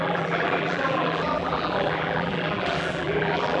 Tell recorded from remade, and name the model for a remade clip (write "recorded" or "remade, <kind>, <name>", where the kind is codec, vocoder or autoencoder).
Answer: remade, vocoder, BigVGAN v2